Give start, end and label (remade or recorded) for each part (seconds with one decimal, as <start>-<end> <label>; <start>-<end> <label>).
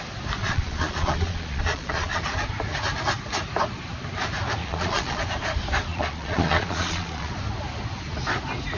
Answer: 0.0-0.4 recorded; 0.4-2.2 remade; 2.2-4.6 recorded; 4.6-5.2 remade; 5.2-5.9 recorded; 5.9-7.3 remade; 7.3-8.8 recorded